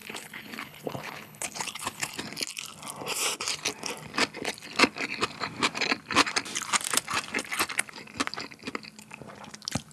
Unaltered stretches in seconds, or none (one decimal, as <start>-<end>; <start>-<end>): 2.1-9.9